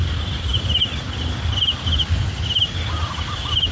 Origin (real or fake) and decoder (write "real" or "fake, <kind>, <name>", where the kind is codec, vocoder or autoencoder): real